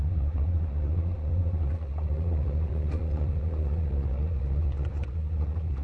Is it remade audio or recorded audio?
remade